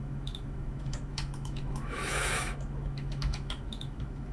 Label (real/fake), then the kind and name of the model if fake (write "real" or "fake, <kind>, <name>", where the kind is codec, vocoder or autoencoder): fake, autoencoder, DAC-VAE